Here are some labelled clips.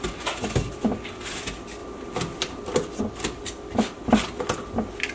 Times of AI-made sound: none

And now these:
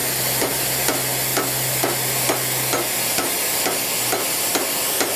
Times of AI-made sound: none

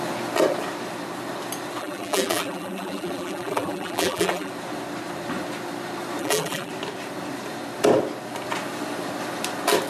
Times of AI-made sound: 1.8-4.5 (vocoder, BigVGAN v2); 6.2-6.7

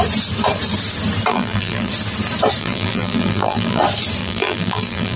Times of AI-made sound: 1.3-1.9 (vocoder, BigVGAN v2); 2.6-3.8; 4.2-5.2